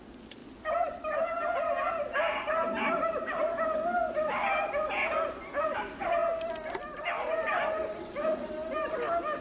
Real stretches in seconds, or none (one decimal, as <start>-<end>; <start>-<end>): 0.0-9.4

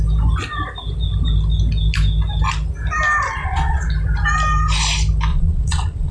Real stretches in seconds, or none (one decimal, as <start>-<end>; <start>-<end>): 0.0-3.4; 3.9-5.3

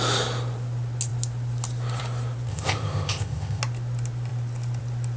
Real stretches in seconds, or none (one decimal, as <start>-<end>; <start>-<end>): 0.0-2.5; 3.6-5.2